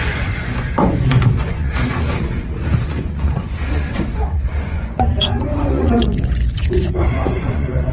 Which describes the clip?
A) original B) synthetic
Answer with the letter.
B